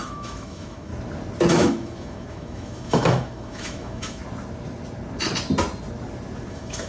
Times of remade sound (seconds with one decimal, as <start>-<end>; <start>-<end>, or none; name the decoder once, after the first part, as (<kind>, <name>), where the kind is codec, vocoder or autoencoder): 0.0-0.9 (autoencoder, DAC-VAE); 1.5-4.2; 6.5-6.9